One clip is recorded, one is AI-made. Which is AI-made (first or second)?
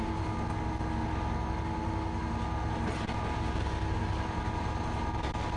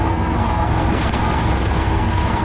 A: second